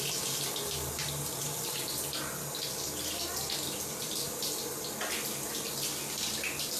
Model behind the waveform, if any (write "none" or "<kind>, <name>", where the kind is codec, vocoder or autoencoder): none